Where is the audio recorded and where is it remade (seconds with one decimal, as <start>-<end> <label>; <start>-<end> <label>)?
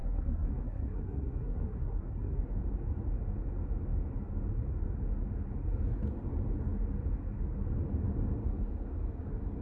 0.0-2.4 remade; 2.4-9.6 recorded